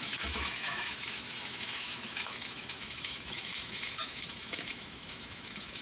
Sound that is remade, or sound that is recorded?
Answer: remade